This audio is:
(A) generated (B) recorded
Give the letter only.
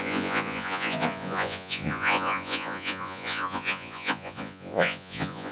A